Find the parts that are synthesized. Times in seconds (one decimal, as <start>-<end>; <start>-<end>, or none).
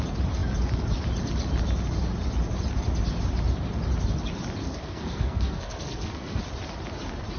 4.6-6.4